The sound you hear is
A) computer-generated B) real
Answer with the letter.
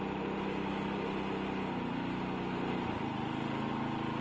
B